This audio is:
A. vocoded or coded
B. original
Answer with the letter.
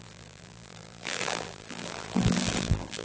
A